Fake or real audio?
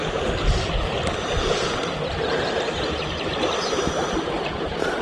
real